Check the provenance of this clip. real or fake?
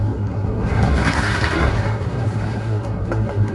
fake